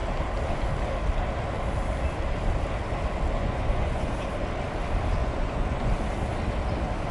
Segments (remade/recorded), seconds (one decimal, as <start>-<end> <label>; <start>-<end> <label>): 0.0-3.4 recorded; 3.4-4.1 remade; 4.1-5.2 recorded; 5.2-5.9 remade; 5.9-7.1 recorded